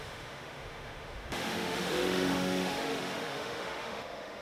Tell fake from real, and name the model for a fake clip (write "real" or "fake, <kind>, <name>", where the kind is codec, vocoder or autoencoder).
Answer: fake, autoencoder, DAC-VAE